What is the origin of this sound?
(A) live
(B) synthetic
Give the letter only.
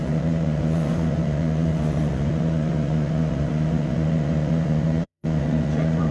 B